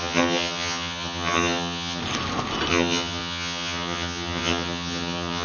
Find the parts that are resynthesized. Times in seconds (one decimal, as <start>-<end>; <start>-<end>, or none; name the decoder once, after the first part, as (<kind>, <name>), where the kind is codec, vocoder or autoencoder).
0.0-2.0 (vocoder, HiFi-GAN); 2.7-5.4